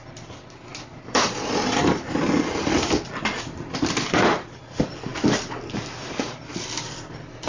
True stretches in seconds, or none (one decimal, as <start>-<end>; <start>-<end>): 0.0-0.7; 3.2-5.1